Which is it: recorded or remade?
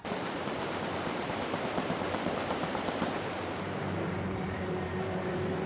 remade